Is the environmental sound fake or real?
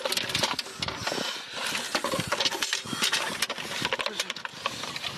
real